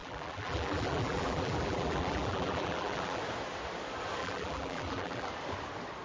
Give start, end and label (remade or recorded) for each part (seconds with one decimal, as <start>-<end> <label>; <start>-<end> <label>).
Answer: 0.0-3.2 remade; 3.2-4.2 recorded; 4.2-5.3 remade; 5.3-6.0 recorded